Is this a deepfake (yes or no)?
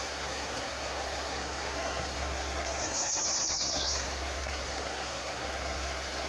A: yes